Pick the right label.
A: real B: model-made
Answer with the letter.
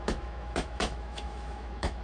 B